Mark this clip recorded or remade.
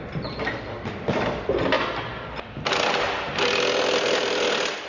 recorded